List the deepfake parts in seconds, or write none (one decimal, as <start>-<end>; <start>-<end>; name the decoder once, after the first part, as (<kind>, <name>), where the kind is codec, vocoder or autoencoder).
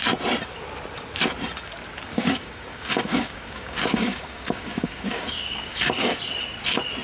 2.1-6.2 (codec, DAC)